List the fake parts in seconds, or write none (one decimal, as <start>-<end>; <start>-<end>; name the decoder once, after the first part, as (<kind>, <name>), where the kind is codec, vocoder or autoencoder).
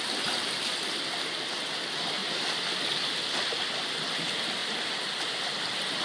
2.2-2.8 (vocoder, BigVGAN v2); 4.6-5.4